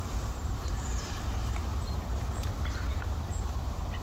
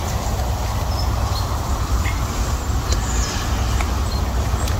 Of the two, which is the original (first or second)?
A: second